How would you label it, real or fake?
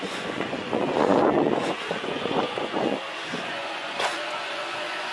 fake